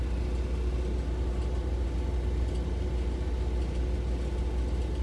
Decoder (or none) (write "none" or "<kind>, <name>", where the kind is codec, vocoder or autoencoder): none